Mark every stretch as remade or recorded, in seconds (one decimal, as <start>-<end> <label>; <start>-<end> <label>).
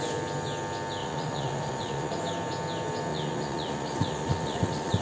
0.0-1.0 recorded; 1.0-2.2 remade; 2.2-3.1 recorded; 3.1-5.0 remade